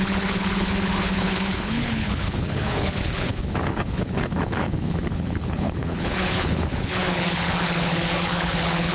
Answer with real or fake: fake